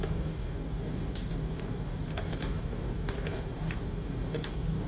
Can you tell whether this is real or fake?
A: fake